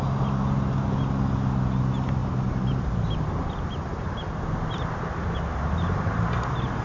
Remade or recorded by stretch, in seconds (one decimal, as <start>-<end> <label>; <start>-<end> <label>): 0.0-6.8 recorded